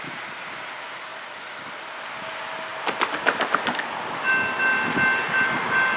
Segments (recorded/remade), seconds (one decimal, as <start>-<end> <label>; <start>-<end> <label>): 0.0-2.7 recorded; 2.7-4.3 remade; 4.3-6.0 recorded